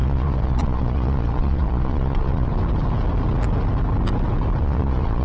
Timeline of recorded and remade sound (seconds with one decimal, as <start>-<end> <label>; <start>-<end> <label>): 0.0-2.5 remade; 2.5-4.6 recorded; 4.6-5.2 remade